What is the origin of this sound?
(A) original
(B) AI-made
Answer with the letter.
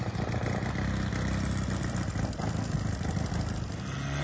A